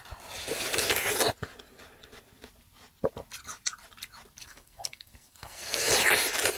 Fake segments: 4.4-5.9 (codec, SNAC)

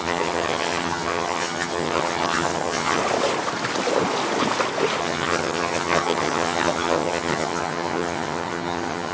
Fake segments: 0.0-3.0 (vocoder, HiFi-GAN); 5.0-9.1

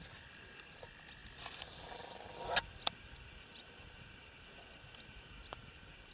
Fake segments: none

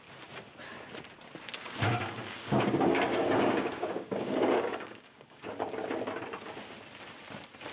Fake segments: 1.6-5.4 (codec, DAC)

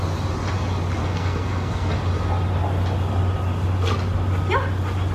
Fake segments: 1.0-2.0 (codec, SNAC)